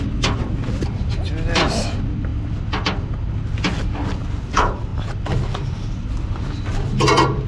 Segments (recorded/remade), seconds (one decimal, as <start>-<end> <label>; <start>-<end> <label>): 0.0-7.5 recorded